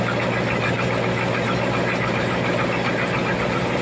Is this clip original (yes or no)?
yes